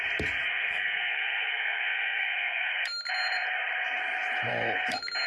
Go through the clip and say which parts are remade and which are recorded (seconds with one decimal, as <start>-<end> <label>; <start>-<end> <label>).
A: 0.0-0.5 recorded; 0.5-2.7 remade; 2.7-5.3 recorded